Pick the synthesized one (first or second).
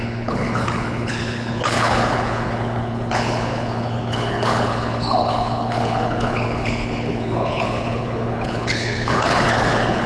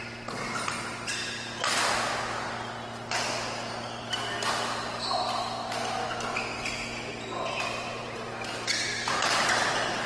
first